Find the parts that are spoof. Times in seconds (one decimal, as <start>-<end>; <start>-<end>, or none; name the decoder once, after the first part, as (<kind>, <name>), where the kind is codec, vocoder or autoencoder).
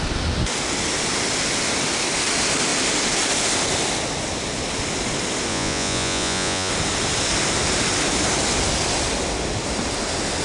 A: 5.5-6.7 (vocoder, Vocos)